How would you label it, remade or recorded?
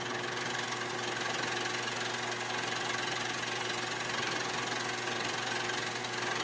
recorded